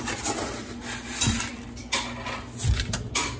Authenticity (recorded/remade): recorded